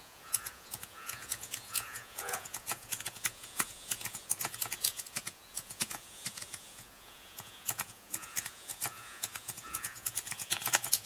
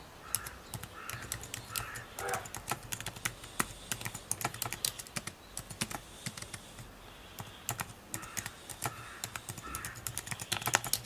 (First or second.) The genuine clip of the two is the second